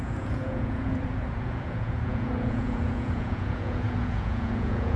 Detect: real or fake fake